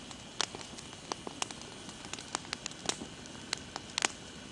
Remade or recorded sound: recorded